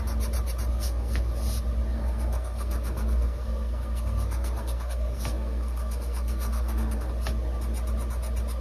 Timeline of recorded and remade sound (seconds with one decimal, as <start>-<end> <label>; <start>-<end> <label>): 0.0-0.7 recorded; 0.7-1.3 remade; 1.3-1.9 recorded; 1.9-7.1 remade; 7.1-8.6 recorded